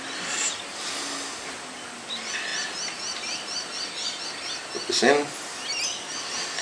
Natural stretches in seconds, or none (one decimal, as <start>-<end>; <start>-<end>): 0.0-6.6